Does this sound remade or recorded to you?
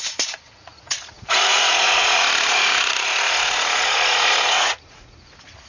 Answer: remade